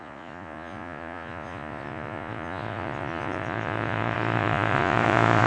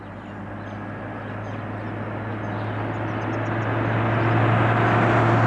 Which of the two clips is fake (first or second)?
first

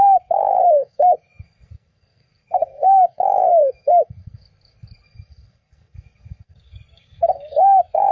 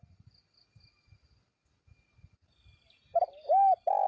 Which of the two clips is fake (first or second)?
first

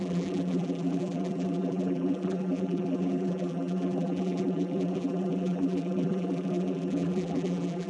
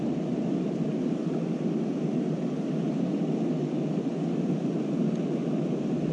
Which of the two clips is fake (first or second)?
first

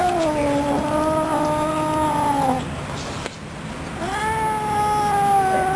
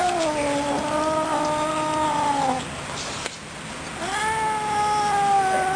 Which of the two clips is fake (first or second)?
second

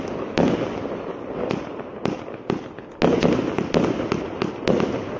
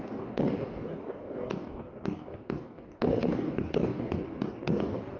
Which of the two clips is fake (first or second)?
second